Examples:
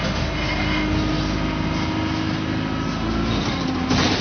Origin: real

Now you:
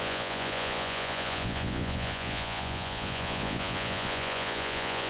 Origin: fake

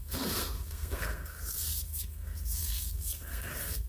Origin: fake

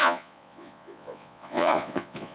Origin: fake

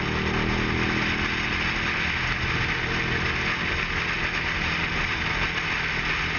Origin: real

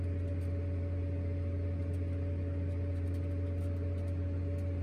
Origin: real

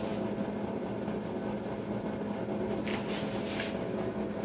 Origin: real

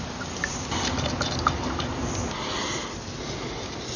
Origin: real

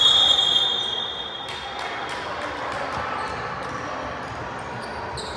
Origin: real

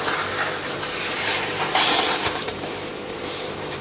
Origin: fake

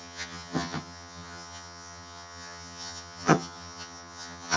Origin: fake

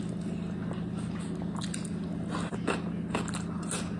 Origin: real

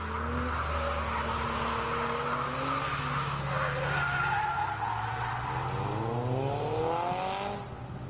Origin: real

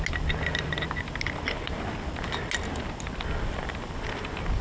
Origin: real